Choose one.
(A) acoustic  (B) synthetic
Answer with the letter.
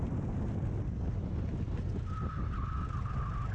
A